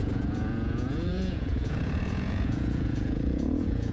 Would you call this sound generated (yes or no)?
yes